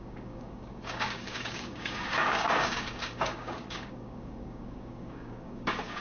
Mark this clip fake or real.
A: fake